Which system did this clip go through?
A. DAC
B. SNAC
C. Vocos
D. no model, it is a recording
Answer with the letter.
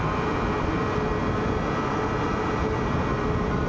D